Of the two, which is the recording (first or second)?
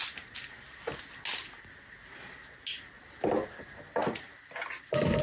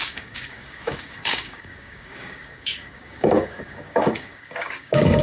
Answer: first